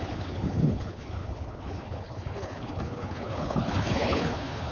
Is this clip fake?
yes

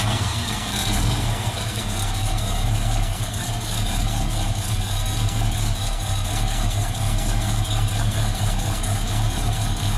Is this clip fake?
yes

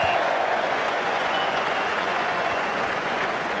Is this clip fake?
yes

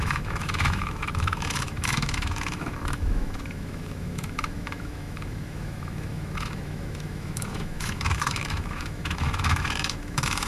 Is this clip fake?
yes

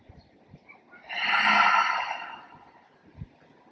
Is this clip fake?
yes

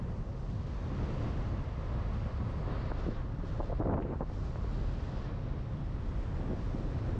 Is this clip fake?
no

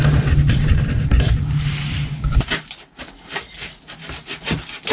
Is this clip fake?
no